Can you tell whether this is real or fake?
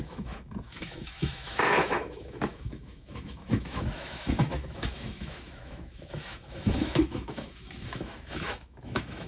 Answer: fake